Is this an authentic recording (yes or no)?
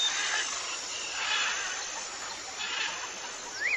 yes